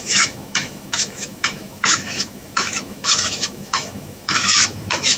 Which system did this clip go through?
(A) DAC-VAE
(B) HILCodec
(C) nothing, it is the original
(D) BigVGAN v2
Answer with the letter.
A